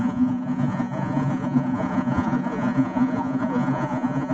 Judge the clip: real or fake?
fake